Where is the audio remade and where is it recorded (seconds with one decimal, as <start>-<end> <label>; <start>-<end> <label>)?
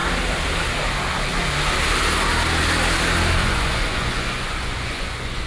0.0-3.4 recorded; 3.4-5.5 remade